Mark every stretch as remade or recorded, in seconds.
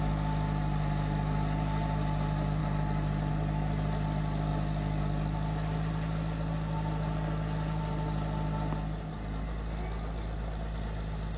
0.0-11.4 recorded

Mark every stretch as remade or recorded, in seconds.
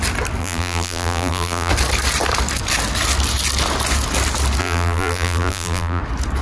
0.0-0.4 recorded; 0.4-1.7 remade; 1.7-4.6 recorded; 4.6-6.0 remade; 6.0-6.4 recorded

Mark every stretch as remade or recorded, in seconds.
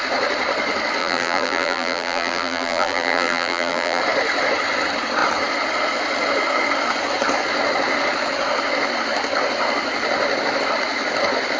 0.0-1.0 recorded; 1.0-4.0 remade; 4.0-11.6 recorded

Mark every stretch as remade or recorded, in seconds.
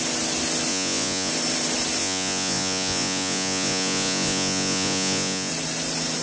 0.0-0.7 recorded; 0.7-1.3 remade; 1.3-2.0 recorded; 2.0-5.5 remade; 5.5-6.2 recorded